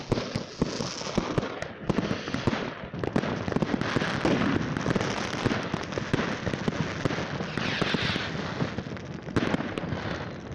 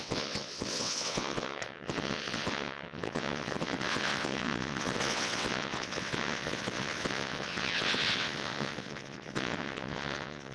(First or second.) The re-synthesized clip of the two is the second